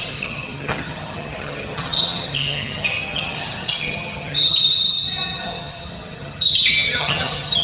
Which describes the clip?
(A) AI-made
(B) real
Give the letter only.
A